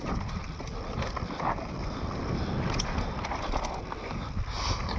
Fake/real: real